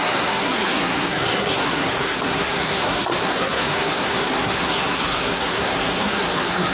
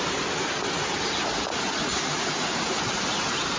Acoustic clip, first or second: second